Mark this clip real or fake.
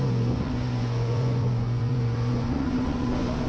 fake